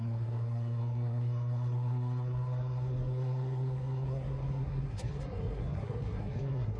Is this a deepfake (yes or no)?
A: yes